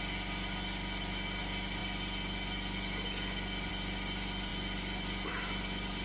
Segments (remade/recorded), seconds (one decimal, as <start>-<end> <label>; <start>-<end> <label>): 0.0-6.0 recorded